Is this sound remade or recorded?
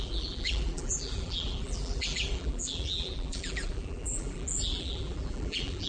remade